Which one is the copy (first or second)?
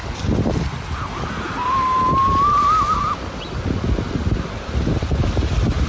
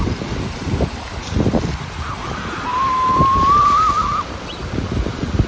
second